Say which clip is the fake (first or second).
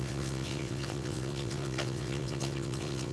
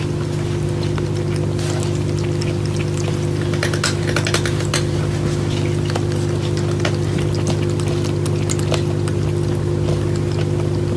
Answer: first